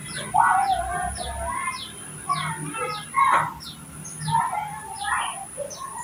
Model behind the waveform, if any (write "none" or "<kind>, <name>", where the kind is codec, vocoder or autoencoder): none